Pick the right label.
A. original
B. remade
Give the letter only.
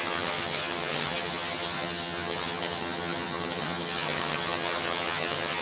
B